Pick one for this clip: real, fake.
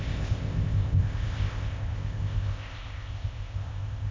fake